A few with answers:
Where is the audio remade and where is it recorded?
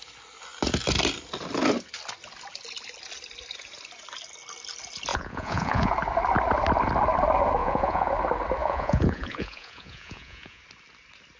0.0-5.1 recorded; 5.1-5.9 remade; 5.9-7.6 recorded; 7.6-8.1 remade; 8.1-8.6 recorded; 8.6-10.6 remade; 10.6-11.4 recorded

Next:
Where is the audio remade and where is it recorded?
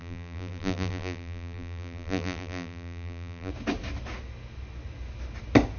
0.0-3.5 remade; 3.5-5.8 recorded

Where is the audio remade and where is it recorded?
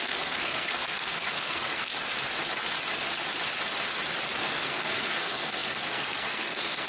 0.0-1.9 remade; 1.9-4.4 recorded; 4.4-6.9 remade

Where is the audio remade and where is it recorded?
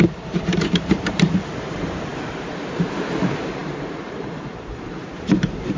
0.0-2.1 remade; 2.1-3.2 recorded; 3.2-5.8 remade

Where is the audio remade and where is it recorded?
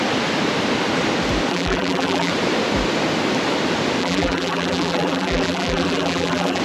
0.0-1.5 recorded; 1.5-2.3 remade; 2.3-4.0 recorded; 4.0-6.6 remade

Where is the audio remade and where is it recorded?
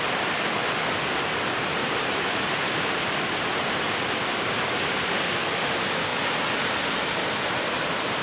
0.0-1.8 recorded; 1.8-4.1 remade; 4.1-8.2 recorded